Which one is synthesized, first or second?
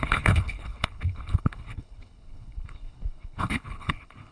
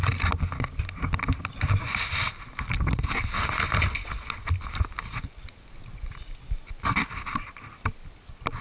first